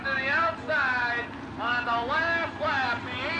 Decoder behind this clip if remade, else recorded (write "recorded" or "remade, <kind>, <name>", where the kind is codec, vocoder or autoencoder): recorded